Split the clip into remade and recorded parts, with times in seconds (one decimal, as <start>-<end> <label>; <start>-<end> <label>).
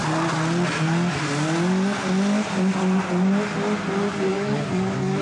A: 0.0-4.3 recorded; 4.3-5.2 remade